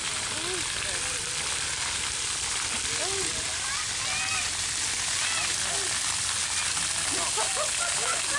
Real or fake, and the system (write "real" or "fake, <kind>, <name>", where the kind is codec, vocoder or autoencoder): real